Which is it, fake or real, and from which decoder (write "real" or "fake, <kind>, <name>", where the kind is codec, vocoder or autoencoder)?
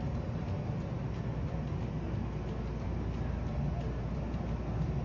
real